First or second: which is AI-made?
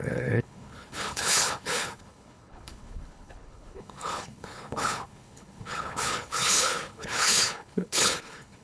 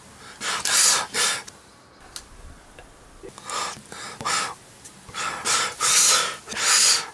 first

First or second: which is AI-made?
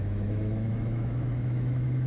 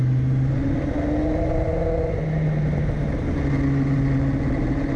first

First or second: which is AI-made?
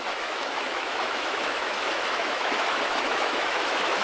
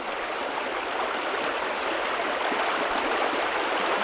first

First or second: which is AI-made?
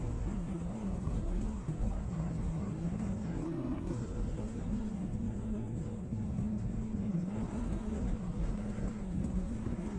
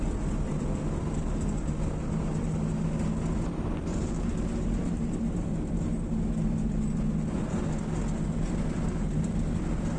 first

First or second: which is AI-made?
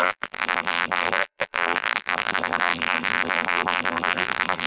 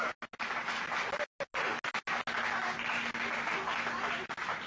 first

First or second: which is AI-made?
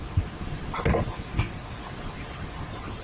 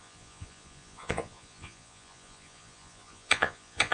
second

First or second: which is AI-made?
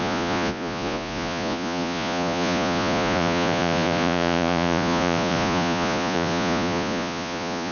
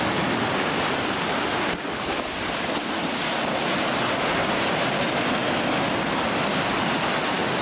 first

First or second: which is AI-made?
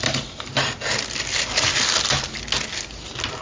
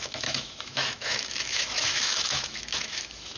second